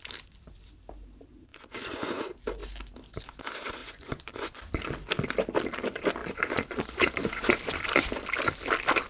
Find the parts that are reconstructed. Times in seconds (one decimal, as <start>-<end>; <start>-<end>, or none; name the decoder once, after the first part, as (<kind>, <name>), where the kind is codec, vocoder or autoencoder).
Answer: 1.5-2.2 (vocoder, Vocos); 3.8-4.6; 6.2-7.6